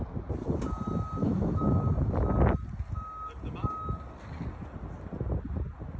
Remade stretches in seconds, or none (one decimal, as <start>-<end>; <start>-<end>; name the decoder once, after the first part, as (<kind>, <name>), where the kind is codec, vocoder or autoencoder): 1.2-1.8 (autoencoder, DAC-VAE)